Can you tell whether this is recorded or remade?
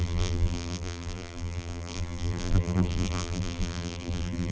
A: remade